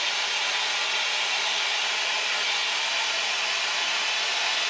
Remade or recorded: recorded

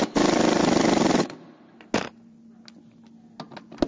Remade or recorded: recorded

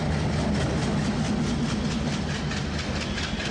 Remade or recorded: recorded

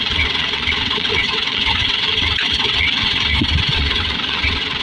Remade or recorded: remade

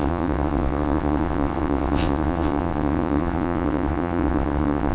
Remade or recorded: remade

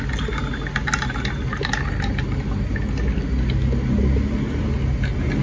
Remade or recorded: recorded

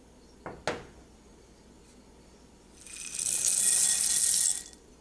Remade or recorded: recorded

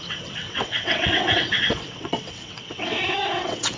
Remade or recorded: remade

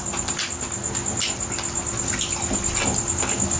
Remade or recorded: recorded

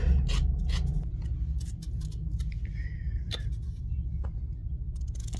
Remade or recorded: recorded